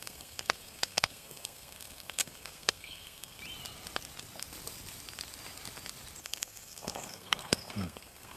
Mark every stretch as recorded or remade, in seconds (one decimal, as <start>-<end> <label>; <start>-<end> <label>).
0.0-3.4 remade; 3.4-6.2 recorded; 6.2-8.4 remade